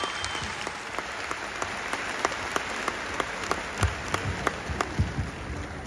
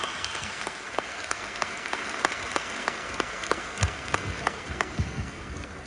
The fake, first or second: second